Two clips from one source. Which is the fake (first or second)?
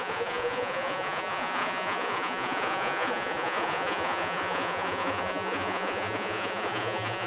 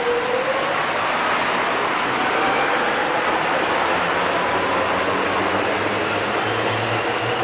first